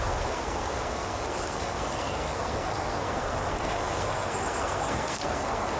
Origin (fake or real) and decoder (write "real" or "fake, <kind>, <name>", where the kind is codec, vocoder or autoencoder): fake, codec, SNAC